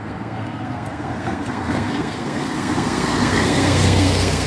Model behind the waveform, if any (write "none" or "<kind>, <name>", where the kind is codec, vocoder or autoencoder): codec, SNAC